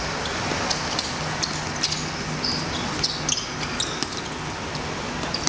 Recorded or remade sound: recorded